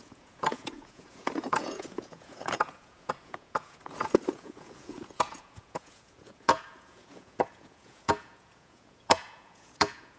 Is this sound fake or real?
fake